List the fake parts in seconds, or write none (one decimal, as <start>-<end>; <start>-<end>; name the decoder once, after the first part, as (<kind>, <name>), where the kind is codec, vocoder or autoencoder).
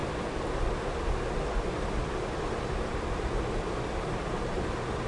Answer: none